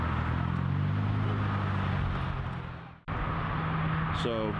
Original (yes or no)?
yes